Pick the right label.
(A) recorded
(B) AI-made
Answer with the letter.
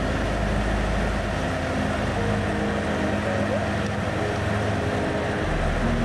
A